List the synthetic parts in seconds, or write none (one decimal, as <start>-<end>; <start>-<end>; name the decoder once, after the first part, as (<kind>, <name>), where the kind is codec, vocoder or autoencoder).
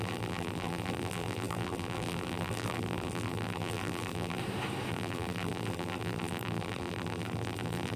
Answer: 0.0-4.4 (vocoder, BigVGAN v2); 4.9-8.0